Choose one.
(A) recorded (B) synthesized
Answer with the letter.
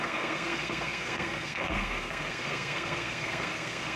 B